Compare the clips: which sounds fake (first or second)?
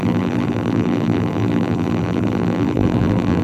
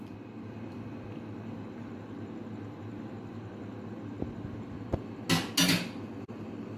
first